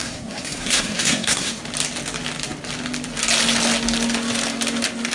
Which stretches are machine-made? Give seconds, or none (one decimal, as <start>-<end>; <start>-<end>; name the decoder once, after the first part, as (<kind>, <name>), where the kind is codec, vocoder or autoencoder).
0.0-1.6 (codec, SNAC)